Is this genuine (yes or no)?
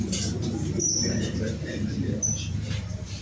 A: no